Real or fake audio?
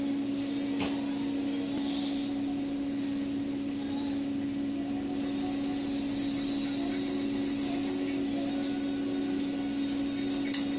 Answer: real